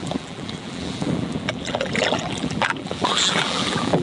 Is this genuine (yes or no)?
no